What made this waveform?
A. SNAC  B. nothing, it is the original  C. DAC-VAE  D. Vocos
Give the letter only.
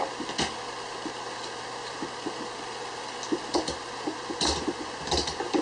B